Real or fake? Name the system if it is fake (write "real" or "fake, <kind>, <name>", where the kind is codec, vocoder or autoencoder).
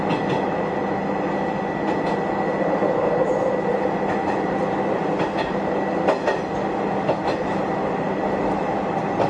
real